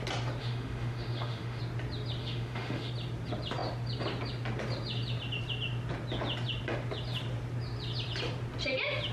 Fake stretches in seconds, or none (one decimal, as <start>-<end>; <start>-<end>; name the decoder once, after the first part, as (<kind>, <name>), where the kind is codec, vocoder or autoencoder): 0.4-1.6 (autoencoder, DAC-VAE); 2.2-2.9

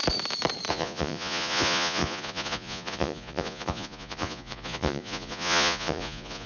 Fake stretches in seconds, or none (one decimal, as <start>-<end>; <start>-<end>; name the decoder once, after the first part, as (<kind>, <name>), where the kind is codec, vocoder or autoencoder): 0.7-6.5 (vocoder, Vocos)

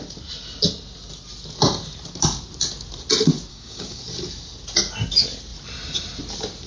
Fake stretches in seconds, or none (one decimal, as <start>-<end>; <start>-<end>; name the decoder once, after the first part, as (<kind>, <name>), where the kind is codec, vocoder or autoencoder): 3.5-4.0 (codec, DAC)

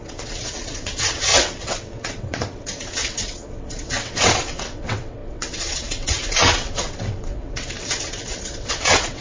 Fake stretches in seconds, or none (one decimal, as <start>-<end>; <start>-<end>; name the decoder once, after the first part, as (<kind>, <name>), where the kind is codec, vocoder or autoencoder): 0.0-9.2 (vocoder, WaveNeXt)

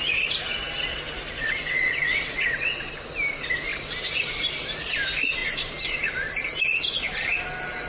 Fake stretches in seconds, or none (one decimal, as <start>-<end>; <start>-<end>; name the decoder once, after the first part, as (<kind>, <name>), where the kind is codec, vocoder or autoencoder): 1.4-2.9 (vocoder, WaveNeXt)

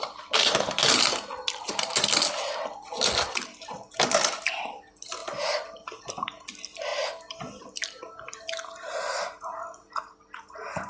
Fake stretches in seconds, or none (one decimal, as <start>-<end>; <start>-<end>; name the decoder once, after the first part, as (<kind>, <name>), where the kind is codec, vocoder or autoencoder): 5.2-6.1 (vocoder, BigVGAN v2); 6.9-7.7

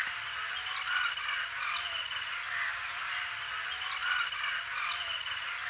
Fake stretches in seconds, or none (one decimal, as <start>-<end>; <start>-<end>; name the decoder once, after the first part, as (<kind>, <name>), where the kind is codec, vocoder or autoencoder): none

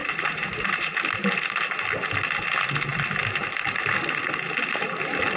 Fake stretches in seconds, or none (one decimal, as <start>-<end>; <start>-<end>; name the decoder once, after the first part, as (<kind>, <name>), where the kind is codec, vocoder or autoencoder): 0.0-1.0 (vocoder, BigVGAN v2)